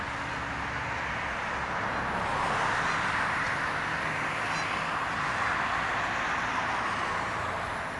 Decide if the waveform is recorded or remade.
recorded